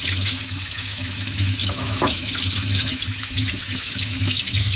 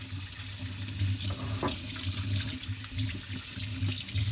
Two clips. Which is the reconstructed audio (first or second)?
first